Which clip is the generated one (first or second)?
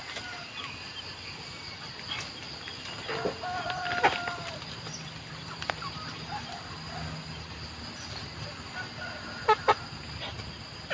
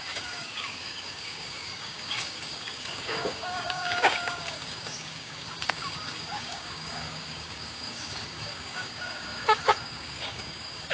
second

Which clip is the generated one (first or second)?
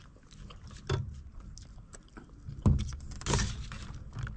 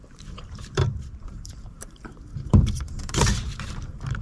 second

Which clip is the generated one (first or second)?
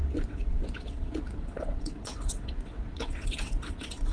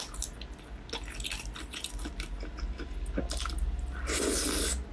first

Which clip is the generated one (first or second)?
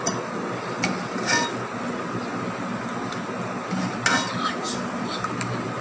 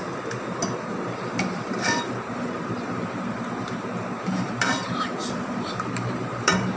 second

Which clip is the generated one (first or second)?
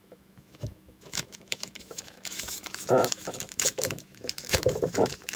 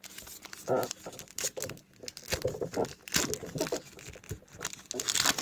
first